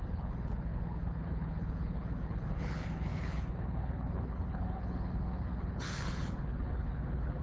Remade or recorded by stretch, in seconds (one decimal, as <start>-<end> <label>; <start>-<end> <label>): 0.0-7.4 remade